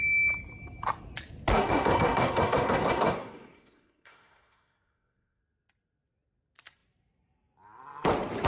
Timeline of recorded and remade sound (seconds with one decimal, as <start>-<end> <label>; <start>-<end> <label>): 0.0-1.5 recorded; 1.5-5.4 remade; 5.4-8.5 recorded